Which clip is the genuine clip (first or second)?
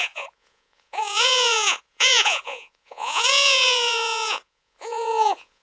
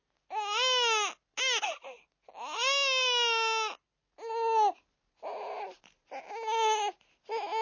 second